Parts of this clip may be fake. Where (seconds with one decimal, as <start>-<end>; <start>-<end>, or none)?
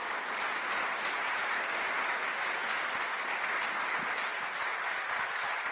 none